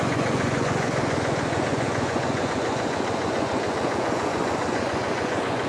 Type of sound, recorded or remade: remade